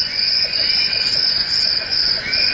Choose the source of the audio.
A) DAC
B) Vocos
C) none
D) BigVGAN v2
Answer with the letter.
B